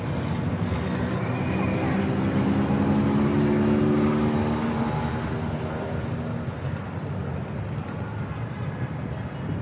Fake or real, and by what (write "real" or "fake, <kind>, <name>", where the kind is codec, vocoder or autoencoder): real